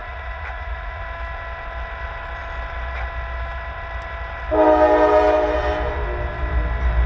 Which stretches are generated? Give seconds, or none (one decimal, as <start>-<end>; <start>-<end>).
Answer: 0.0-1.0

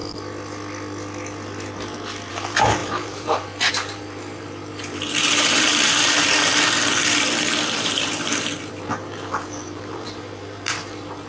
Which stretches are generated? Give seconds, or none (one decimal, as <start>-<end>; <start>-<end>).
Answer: 2.3-6.5; 7.4-11.3